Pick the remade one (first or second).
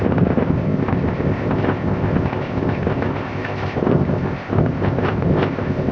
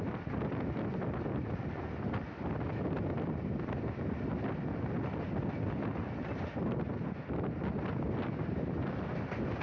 first